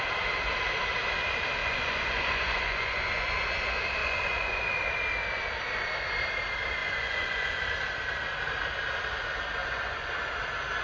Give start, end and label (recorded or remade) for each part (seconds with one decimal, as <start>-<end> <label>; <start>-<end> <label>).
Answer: 0.0-1.6 recorded; 1.6-3.3 remade; 3.3-4.0 recorded; 4.0-4.7 remade; 4.7-6.8 recorded; 6.8-7.6 remade; 7.6-9.6 recorded; 9.6-10.1 remade; 10.1-10.8 recorded